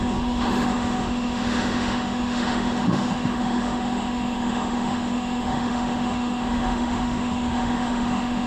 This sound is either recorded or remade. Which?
remade